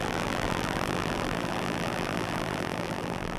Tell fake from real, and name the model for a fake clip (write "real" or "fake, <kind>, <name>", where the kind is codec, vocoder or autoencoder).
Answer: fake, vocoder, BigVGAN v2